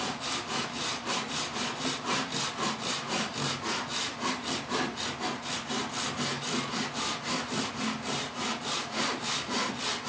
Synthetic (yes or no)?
no